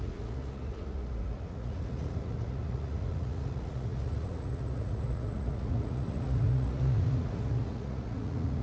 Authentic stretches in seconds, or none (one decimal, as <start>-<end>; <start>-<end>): none